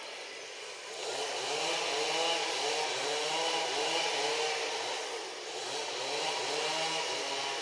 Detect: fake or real real